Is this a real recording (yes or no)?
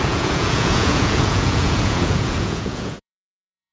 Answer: no